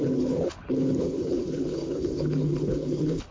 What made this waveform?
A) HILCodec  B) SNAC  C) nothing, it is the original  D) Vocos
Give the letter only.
A